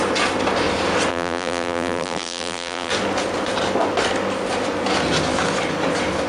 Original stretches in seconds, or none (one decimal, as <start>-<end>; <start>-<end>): 0.0-1.1; 2.9-6.3